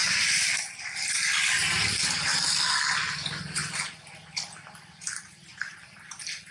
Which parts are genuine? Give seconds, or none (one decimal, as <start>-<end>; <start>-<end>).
0.0-6.5